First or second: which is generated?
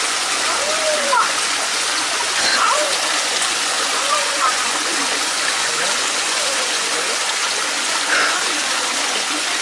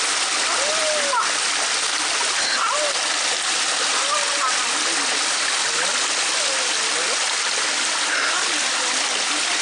first